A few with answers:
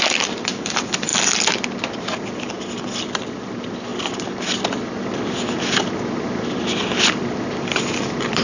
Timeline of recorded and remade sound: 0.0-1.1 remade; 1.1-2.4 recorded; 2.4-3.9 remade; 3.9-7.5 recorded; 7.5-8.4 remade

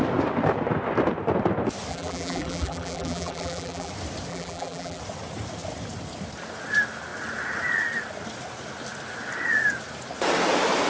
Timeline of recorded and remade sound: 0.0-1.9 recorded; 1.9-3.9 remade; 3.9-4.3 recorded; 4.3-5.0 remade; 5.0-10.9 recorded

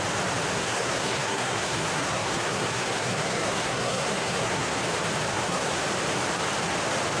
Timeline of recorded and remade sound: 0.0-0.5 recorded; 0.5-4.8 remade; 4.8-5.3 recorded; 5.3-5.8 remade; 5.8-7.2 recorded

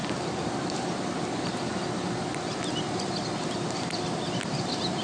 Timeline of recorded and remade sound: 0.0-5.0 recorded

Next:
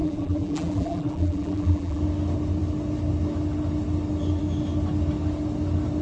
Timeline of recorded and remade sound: 0.0-2.0 remade; 2.0-6.0 recorded